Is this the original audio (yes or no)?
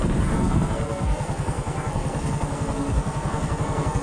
no